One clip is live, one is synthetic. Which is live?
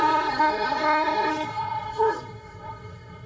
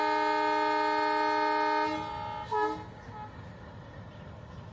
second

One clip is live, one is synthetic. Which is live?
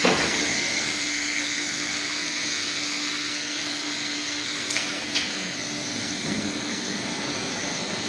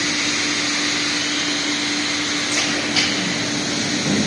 second